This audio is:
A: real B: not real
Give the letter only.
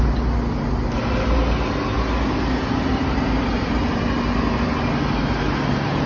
A